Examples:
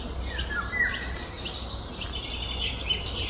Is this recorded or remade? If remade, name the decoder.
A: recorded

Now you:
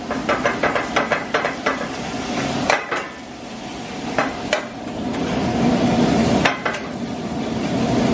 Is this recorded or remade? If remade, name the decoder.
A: recorded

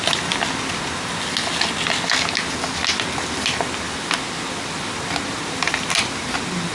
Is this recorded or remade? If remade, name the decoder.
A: recorded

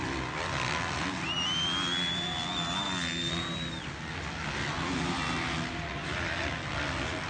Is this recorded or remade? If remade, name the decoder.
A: recorded